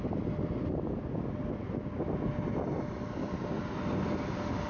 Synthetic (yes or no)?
no